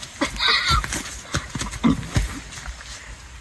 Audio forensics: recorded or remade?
recorded